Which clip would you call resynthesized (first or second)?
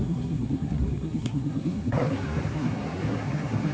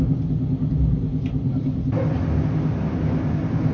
first